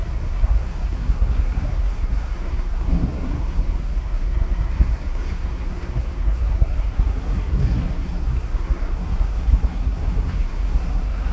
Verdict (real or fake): fake